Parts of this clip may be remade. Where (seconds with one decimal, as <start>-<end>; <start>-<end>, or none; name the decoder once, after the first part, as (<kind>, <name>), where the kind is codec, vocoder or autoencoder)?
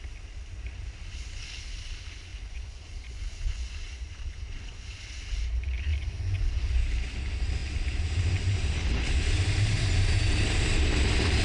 2.3-5.0 (vocoder, Vocos); 5.9-6.7